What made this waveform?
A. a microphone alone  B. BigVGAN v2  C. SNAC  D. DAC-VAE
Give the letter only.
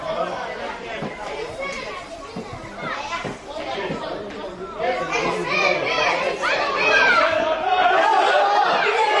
B